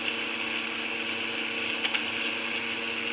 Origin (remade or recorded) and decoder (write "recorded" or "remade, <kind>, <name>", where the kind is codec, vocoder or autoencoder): recorded